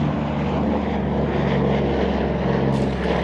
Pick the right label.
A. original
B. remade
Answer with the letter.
A